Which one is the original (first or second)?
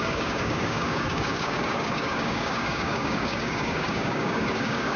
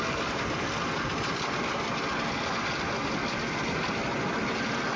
second